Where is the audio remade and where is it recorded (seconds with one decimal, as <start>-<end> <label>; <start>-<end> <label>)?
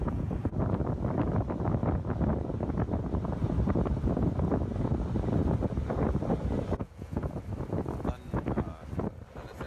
0.0-0.6 remade; 0.6-6.8 recorded; 6.8-7.4 remade; 7.4-9.7 recorded